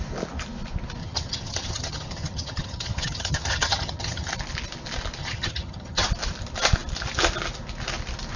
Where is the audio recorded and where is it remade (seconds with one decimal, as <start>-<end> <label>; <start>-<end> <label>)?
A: 0.0-1.0 recorded; 1.0-4.3 remade; 4.3-5.2 recorded; 5.2-6.1 remade; 6.1-8.4 recorded